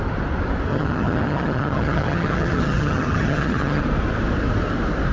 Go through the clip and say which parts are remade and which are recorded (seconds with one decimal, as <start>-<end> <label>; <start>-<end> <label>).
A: 0.0-0.7 recorded; 0.7-3.8 remade; 3.8-5.1 recorded